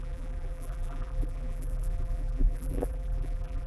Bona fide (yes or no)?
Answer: no